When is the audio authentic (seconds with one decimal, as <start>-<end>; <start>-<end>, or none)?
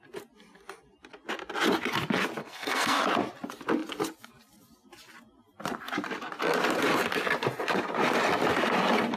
0.0-2.4; 3.0-9.2